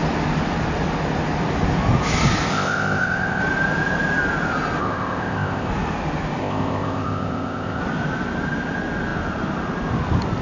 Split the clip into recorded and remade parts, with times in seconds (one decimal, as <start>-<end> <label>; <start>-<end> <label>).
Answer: 0.0-2.5 recorded; 2.5-3.4 remade; 3.4-4.8 recorded; 4.8-5.7 remade; 5.7-6.4 recorded; 6.4-7.8 remade; 7.8-10.4 recorded